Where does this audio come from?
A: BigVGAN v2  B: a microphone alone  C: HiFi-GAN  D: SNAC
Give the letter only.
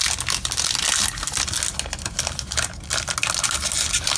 B